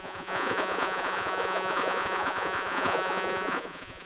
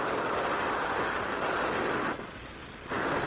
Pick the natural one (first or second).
second